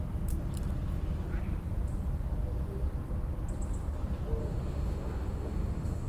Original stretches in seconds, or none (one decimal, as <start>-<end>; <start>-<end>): 0.0-4.4